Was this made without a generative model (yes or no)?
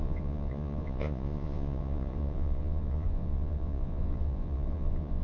no